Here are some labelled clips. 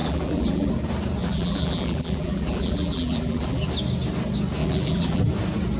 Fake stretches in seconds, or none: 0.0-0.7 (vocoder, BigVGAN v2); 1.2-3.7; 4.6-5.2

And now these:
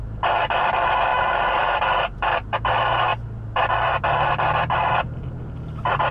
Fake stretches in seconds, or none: 1.1-2.7 (vocoder, BigVGAN v2)

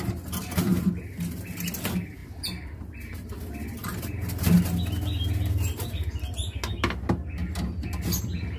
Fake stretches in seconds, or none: none

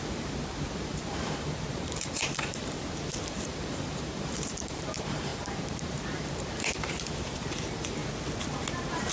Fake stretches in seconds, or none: 0.0-8.0 (vocoder, BigVGAN v2)

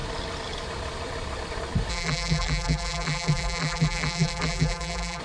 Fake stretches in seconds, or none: 1.9-5.2 (vocoder, BigVGAN v2)